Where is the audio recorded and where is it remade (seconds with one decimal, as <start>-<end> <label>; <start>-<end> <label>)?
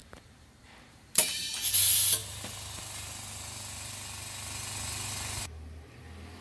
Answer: 0.0-1.5 remade; 1.5-6.4 recorded